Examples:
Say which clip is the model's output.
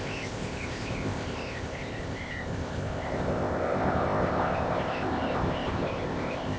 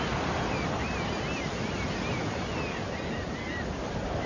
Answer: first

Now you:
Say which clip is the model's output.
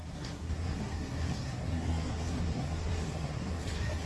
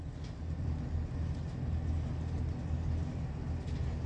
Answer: first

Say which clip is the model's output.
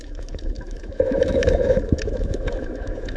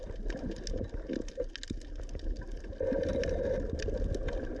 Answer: first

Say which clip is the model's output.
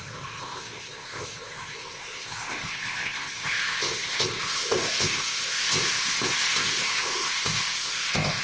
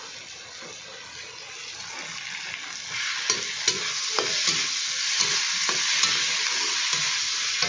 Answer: first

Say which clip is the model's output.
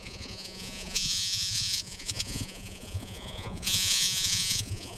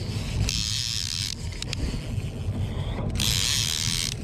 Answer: first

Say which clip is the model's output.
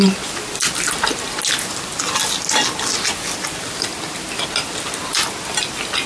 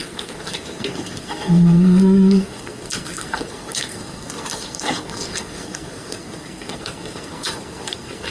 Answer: second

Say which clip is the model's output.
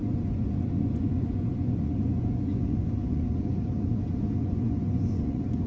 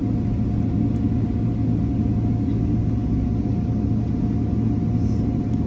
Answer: first